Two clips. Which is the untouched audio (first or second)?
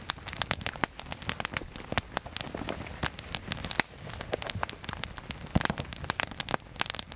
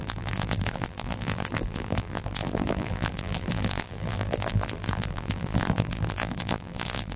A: first